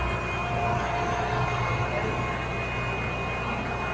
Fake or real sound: real